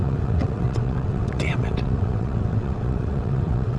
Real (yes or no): no